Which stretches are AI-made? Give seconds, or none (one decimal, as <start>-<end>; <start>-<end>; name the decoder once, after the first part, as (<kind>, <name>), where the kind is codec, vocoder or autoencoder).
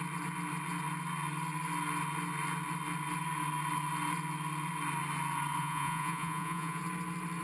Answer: 5.6-6.8 (vocoder, Vocos)